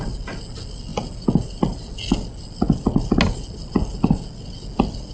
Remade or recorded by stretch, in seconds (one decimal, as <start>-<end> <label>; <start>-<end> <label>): 0.0-5.1 recorded